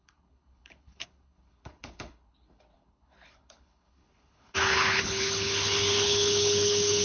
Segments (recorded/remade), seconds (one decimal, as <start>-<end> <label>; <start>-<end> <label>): 0.0-7.0 remade